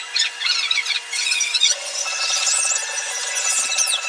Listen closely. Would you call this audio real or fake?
fake